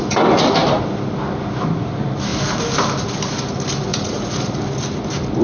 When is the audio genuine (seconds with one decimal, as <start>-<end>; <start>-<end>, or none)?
0.0-3.9; 4.6-5.4